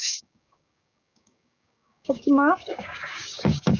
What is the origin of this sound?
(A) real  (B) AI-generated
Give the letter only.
B